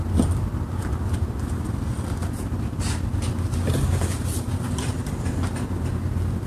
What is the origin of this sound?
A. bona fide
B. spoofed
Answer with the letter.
A